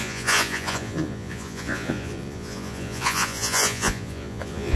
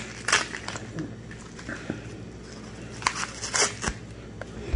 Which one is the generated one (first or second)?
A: first